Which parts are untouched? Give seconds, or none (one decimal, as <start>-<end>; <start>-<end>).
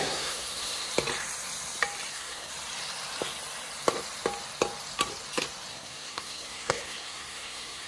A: 0.9-2.1; 2.5-5.7